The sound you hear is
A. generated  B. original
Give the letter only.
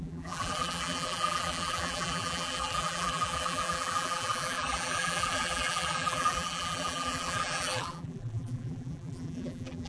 A